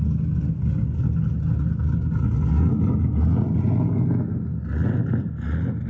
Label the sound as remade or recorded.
recorded